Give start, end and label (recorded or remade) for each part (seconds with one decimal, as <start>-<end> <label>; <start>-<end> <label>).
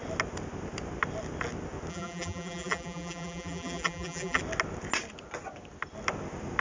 0.0-1.9 recorded; 1.9-4.4 remade; 4.4-6.6 recorded